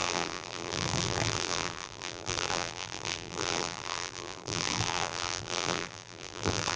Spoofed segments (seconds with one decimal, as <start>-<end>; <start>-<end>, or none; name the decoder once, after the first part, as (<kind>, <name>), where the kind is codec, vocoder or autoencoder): 0.0-6.8 (vocoder, BigVGAN v2)